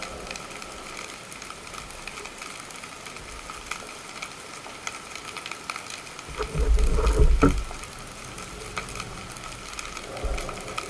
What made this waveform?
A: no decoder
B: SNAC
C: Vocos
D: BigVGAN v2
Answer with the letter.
A